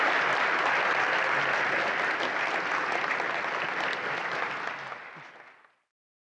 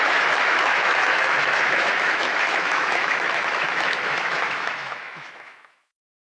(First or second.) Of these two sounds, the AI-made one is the second